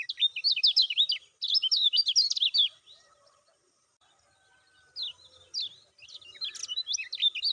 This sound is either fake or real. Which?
real